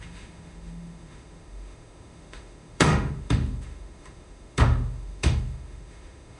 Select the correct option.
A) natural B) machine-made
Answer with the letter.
B